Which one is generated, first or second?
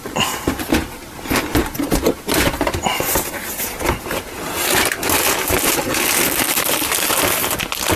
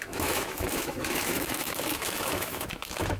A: second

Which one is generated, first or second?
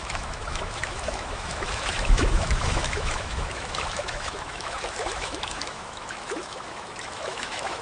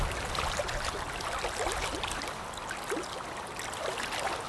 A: first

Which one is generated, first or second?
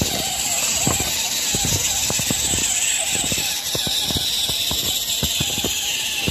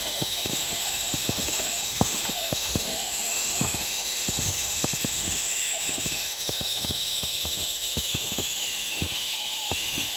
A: second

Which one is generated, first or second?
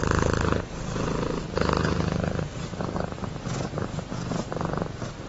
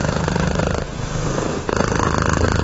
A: second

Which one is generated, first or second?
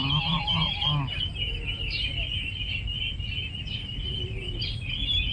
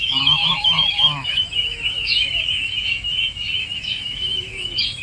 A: second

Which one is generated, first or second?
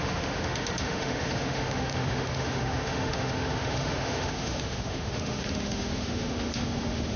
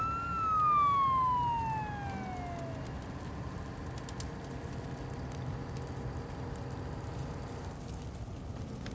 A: first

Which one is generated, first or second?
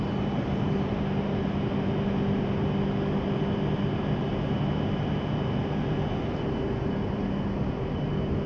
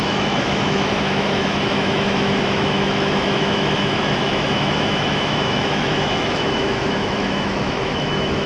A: second